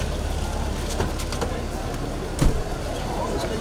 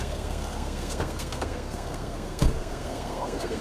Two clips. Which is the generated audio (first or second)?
second